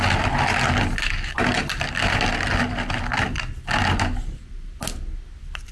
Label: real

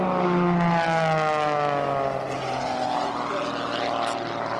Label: real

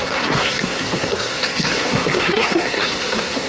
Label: fake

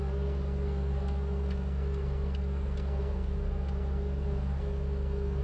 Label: fake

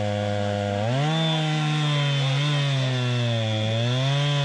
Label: real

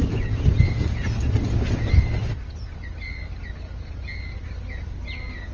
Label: real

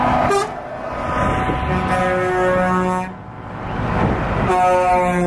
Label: real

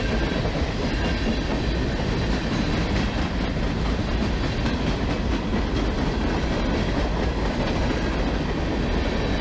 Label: real